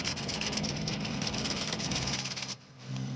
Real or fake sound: fake